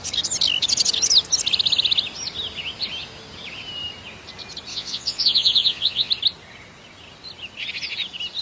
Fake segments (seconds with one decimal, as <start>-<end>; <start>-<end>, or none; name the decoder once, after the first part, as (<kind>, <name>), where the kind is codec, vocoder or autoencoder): 4.7-6.1 (vocoder, Vocos)